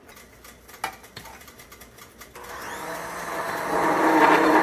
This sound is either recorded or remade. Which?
recorded